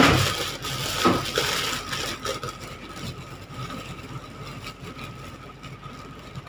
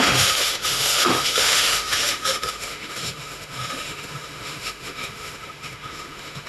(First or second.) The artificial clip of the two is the second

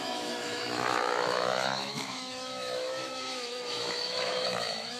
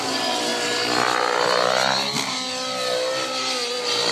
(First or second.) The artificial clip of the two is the first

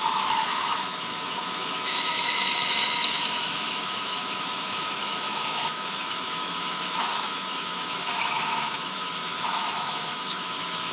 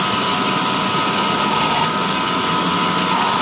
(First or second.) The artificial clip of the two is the first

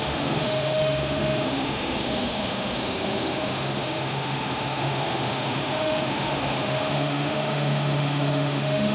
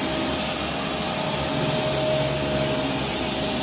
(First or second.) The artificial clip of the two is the first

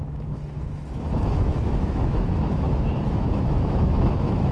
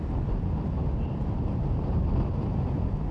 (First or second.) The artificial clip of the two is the first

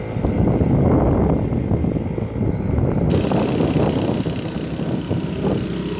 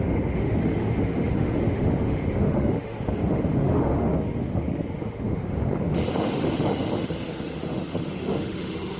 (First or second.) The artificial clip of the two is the second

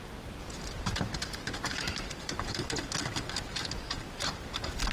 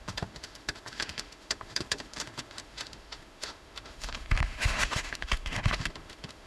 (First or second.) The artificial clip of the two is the second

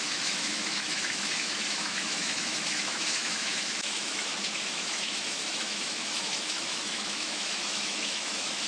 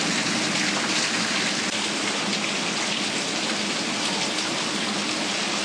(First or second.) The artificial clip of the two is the first